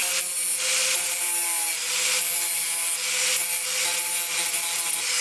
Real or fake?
real